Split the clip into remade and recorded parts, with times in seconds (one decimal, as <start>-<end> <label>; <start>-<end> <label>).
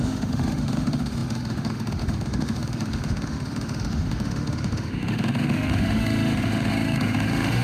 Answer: 0.0-7.6 remade